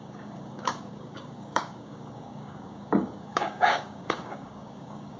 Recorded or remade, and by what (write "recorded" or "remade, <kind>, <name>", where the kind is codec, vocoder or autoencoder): remade, codec, DAC